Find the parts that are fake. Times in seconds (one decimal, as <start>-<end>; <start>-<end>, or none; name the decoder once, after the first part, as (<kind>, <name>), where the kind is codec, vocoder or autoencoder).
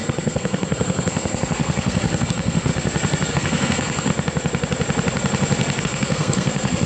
0.0-2.7 (codec, SNAC); 3.3-4.1; 5.8-6.9